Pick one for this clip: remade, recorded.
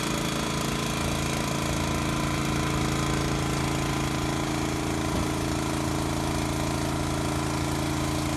recorded